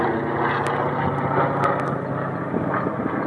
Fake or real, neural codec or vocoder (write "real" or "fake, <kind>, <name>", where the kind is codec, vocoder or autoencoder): real